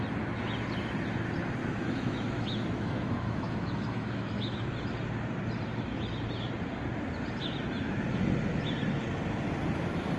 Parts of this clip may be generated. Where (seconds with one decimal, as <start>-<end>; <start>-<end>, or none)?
1.6-4.7